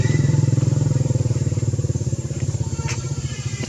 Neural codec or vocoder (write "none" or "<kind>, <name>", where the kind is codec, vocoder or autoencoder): vocoder, BigVGAN v2